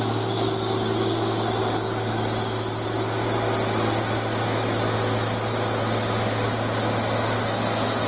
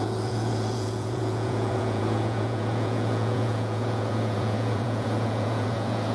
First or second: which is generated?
second